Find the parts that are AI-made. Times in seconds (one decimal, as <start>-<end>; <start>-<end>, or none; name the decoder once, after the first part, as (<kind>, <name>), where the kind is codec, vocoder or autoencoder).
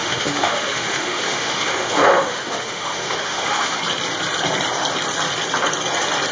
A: 0.0-3.8 (autoencoder, DAC-VAE)